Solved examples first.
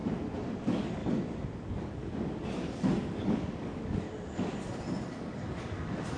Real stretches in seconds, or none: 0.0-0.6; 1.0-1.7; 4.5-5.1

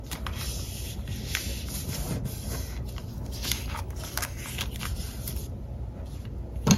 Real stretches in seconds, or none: 0.0-3.1; 4.4-6.8

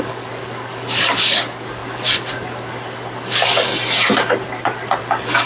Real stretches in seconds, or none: 3.7-5.0

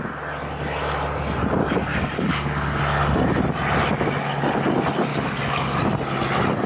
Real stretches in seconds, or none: 0.0-1.6; 2.8-5.1; 5.8-6.7

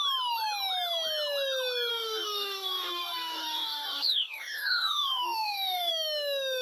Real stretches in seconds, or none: 0.0-1.9; 5.9-6.6

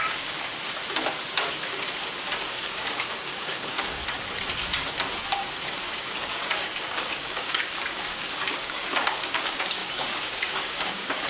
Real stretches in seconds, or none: 0.5-2.4; 4.0-6.1

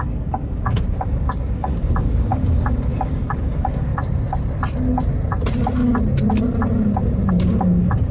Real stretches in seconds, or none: 3.9-7.3